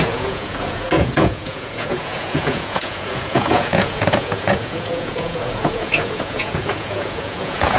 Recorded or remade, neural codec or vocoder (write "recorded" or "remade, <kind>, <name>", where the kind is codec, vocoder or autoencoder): remade, vocoder, Vocos